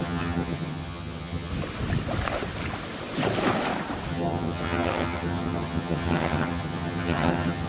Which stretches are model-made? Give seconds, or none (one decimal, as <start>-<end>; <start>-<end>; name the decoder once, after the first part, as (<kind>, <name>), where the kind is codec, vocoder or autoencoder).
0.0-1.5 (vocoder, HiFi-GAN); 4.1-7.7